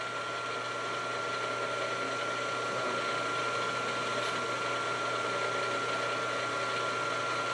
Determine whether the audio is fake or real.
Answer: real